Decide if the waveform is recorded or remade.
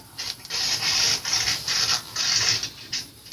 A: remade